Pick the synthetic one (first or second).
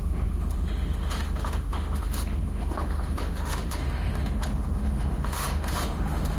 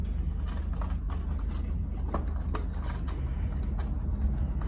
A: first